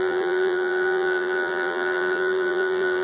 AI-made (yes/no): yes